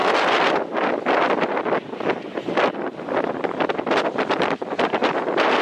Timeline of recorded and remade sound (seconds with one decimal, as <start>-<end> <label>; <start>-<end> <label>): 0.0-5.6 recorded